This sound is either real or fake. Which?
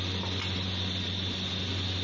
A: real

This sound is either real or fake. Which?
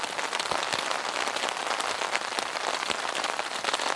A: real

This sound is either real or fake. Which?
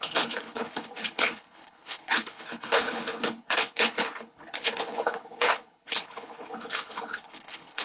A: fake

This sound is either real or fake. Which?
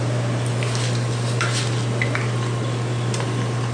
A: real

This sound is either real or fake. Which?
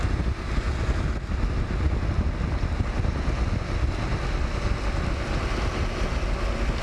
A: real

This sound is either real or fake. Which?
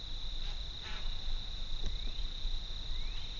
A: real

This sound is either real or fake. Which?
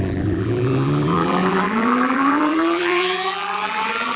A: fake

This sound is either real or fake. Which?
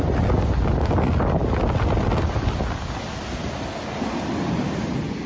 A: real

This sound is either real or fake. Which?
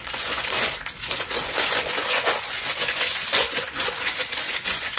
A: fake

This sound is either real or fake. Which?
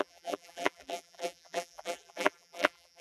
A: fake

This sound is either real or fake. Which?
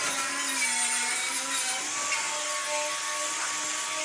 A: real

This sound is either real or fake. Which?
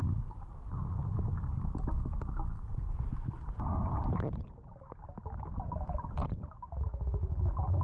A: real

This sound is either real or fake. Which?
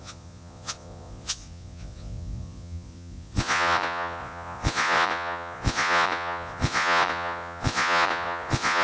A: fake